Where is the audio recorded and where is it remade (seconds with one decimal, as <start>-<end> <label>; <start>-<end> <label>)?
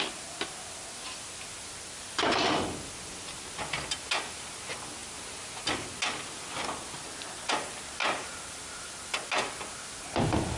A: 0.0-8.0 recorded; 8.0-8.9 remade; 8.9-10.6 recorded